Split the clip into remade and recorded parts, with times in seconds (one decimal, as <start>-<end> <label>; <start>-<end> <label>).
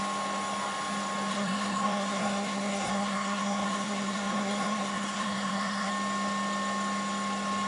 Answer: 0.0-1.3 recorded; 1.3-5.9 remade; 5.9-7.7 recorded